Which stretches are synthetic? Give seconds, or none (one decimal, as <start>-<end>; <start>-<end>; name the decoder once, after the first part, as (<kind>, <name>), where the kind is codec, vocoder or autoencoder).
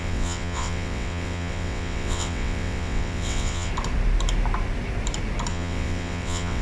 0.0-3.7 (vocoder, WaveNeXt); 5.5-6.6